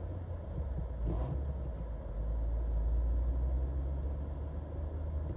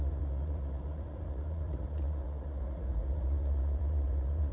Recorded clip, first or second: first